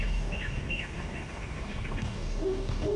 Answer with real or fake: fake